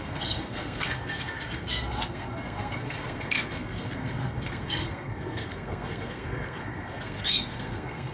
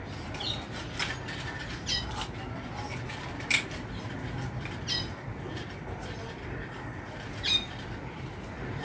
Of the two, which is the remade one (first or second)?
first